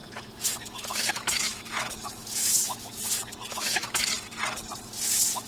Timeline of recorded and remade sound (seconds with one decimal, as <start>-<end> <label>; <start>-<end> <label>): 0.0-2.9 remade; 2.9-3.5 recorded; 3.5-4.1 remade; 4.1-5.5 recorded